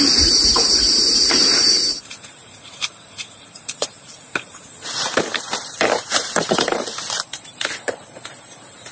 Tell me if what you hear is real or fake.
fake